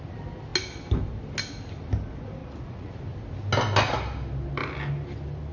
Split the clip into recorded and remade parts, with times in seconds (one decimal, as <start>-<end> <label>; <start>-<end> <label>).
0.0-2.4 recorded; 2.4-2.9 remade; 2.9-5.5 recorded